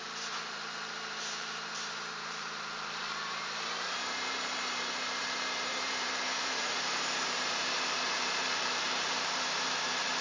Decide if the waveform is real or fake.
fake